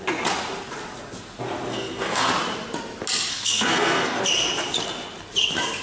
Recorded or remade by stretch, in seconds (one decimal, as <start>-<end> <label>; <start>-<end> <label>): 0.0-1.7 recorded; 1.7-2.3 remade; 2.3-3.3 recorded; 3.3-4.2 remade; 4.2-5.8 recorded